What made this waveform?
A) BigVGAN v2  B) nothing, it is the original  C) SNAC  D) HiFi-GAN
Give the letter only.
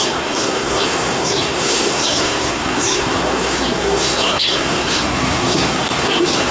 C